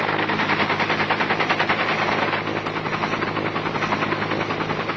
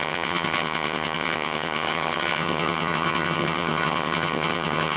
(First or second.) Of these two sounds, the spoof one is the second